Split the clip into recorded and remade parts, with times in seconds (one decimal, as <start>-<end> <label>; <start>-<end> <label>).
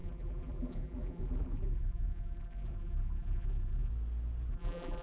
0.0-3.9 remade; 3.9-4.5 recorded; 4.5-5.0 remade